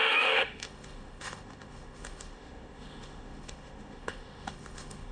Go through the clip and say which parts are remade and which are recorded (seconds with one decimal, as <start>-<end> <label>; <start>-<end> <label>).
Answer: 0.0-5.1 remade